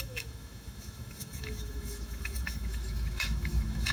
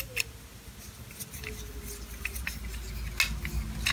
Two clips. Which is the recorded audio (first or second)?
second